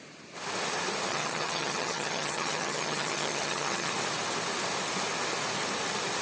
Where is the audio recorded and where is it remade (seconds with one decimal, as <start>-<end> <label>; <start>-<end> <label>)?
0.0-1.1 recorded; 1.1-3.9 remade; 3.9-6.2 recorded